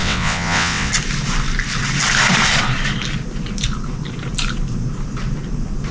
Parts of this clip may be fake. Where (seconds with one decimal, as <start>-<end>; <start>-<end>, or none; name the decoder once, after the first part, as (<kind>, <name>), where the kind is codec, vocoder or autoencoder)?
0.0-0.9 (vocoder, WaveNeXt)